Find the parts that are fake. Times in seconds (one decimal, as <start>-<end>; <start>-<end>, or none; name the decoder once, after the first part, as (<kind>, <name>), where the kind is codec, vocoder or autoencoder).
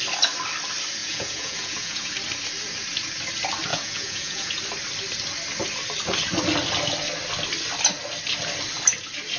1.0-2.1 (vocoder, Vocos); 3.7-4.6